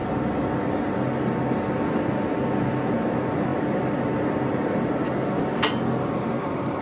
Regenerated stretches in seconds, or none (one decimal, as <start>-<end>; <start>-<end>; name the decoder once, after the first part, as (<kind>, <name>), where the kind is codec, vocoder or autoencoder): none